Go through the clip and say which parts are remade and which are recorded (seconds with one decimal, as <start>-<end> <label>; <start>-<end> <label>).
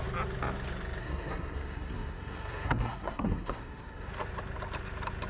0.0-1.0 recorded; 1.0-4.1 remade; 4.1-5.3 recorded